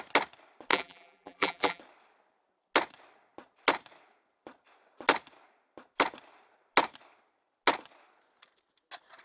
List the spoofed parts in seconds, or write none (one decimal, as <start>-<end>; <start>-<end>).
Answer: 0.7-1.8